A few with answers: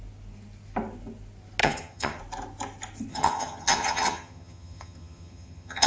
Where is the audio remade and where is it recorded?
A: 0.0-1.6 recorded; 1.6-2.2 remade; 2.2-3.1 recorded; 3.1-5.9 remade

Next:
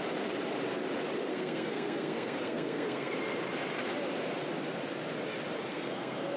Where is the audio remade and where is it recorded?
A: 0.0-1.3 recorded; 1.3-3.1 remade; 3.1-5.7 recorded; 5.7-6.4 remade